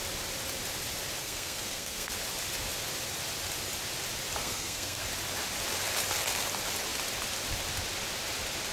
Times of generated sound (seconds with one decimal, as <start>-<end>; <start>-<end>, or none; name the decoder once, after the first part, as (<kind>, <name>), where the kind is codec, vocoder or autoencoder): 1.2-2.1 (codec, SNAC); 4.4-5.0